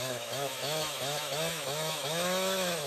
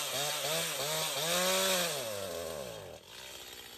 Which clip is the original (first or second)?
second